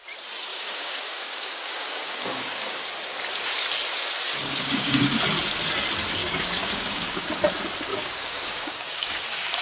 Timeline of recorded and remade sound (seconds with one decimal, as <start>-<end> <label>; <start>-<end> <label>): 0.0-0.5 recorded; 0.5-2.9 remade; 2.9-4.4 recorded; 4.4-5.2 remade; 5.2-6.2 recorded; 6.2-7.3 remade; 7.3-7.9 recorded; 7.9-9.6 remade